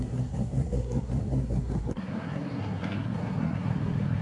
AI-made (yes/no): yes